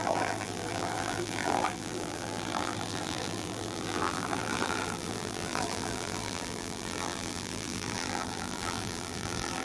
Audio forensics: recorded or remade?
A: remade